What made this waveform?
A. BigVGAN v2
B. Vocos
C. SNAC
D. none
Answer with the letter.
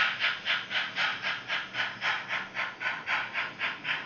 D